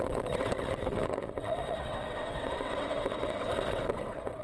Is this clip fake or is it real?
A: fake